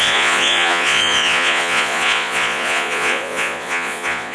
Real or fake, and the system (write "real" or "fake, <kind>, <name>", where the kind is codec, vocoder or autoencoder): fake, vocoder, Vocos